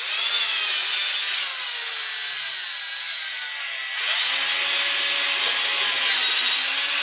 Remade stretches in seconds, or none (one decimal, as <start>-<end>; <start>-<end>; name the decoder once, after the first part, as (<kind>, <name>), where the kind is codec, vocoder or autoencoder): none